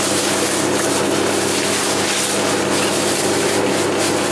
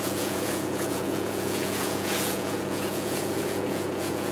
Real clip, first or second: first